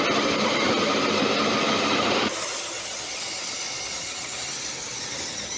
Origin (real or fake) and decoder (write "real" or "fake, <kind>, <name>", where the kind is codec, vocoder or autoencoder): real